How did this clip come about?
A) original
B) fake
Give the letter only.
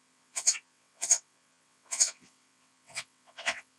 B